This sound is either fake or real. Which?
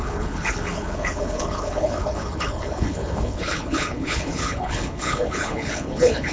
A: fake